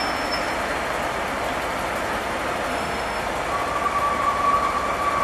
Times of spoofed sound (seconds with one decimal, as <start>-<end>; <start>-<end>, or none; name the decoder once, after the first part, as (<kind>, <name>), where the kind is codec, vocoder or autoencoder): 2.7-3.2 (autoencoder, DAC-VAE)